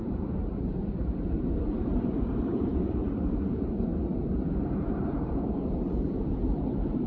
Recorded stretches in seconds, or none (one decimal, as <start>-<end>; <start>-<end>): 3.9-4.6